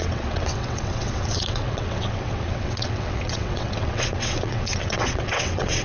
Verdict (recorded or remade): remade